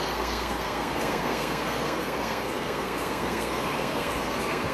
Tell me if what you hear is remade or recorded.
remade